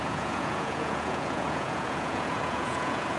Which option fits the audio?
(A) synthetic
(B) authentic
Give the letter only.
A